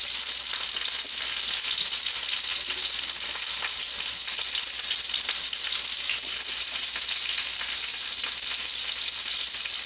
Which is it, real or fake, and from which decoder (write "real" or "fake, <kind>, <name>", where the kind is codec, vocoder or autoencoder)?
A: real